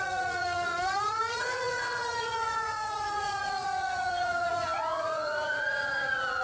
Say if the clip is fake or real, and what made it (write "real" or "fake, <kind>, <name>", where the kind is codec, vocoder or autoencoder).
fake, vocoder, Vocos